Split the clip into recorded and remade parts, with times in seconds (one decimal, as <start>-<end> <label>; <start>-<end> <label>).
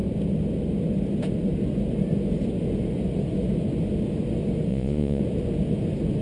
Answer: 0.0-4.7 recorded; 4.7-5.2 remade; 5.2-6.2 recorded